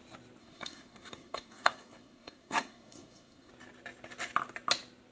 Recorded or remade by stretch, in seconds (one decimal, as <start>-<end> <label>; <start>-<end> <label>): 0.0-0.4 recorded; 0.4-3.5 remade; 3.5-5.1 recorded